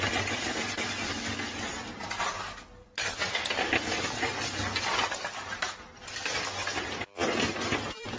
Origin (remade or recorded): recorded